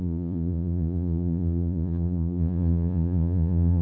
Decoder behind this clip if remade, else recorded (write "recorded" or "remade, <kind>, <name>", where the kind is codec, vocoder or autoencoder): remade, vocoder, Vocos